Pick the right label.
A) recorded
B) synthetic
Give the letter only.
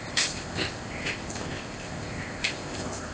B